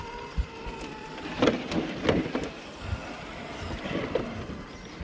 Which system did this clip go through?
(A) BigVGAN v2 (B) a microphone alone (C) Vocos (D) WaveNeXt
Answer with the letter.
B